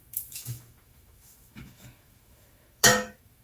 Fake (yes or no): yes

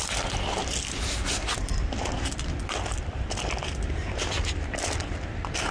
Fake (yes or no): no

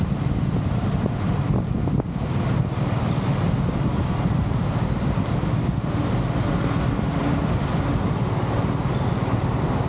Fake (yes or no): no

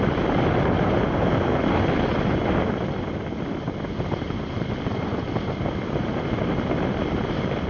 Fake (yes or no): no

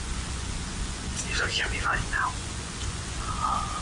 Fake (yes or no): yes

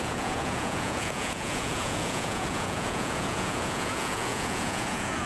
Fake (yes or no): yes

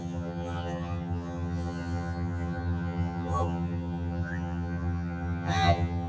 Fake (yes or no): yes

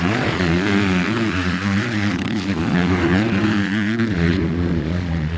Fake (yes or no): yes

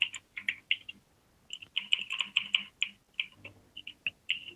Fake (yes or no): no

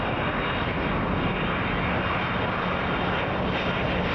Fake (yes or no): no